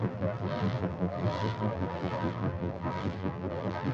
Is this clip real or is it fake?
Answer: fake